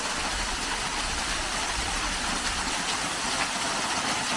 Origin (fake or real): real